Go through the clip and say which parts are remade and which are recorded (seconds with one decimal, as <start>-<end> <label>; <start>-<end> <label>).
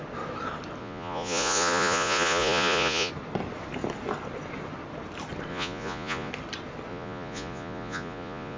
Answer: 0.0-0.8 recorded; 0.8-3.1 remade; 3.1-5.5 recorded; 5.5-6.3 remade; 6.3-6.9 recorded; 6.9-8.6 remade